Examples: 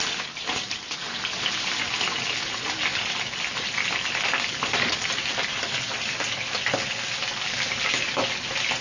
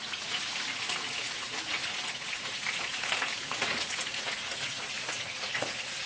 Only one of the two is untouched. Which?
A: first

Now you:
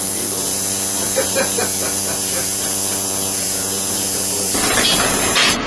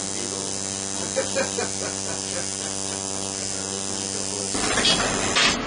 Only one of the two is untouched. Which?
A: second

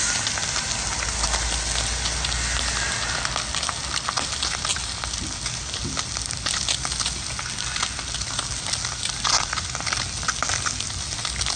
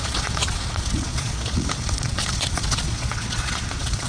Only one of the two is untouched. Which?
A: first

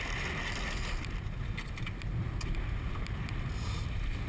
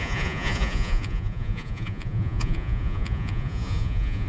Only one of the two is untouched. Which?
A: first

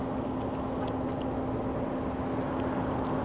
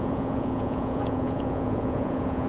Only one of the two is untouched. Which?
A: first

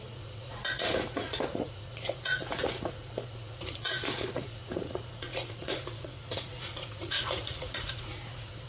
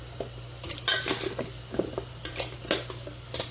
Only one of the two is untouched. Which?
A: second